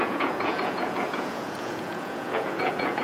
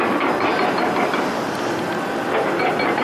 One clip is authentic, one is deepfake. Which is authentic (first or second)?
second